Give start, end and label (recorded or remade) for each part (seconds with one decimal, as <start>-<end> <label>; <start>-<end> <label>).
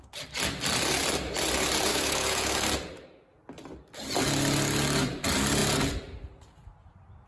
0.0-1.9 recorded; 1.9-2.7 remade; 2.7-7.3 recorded